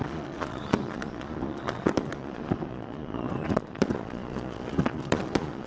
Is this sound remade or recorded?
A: remade